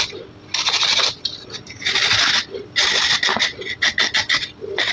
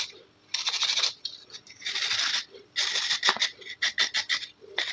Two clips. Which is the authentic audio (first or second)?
first